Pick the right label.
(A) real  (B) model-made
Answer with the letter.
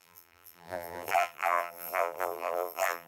B